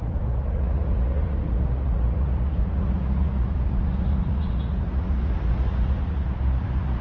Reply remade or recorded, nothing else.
remade